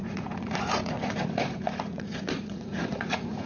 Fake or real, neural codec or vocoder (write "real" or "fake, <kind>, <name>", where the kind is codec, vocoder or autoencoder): fake, vocoder, Vocos